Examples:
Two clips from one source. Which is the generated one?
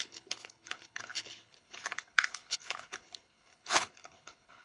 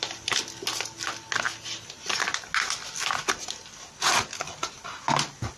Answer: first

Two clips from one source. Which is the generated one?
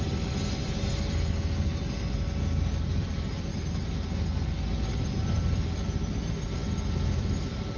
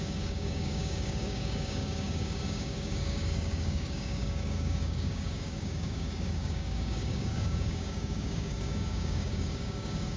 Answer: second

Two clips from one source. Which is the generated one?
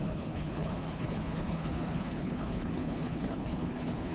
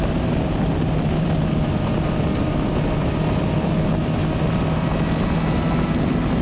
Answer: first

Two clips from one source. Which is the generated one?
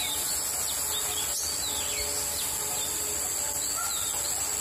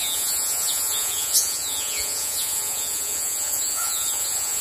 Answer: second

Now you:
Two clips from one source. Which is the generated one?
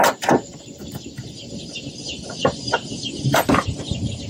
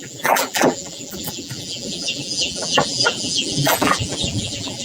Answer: second